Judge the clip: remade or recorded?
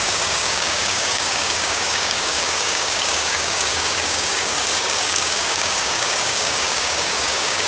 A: remade